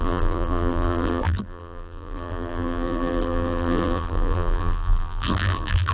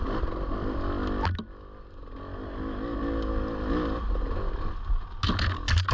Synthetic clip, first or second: first